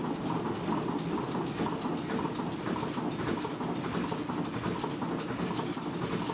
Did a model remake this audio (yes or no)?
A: no